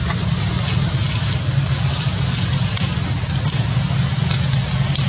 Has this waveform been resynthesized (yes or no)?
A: no